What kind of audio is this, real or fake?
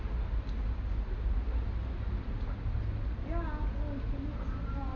real